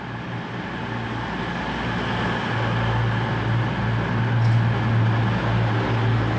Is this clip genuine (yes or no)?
yes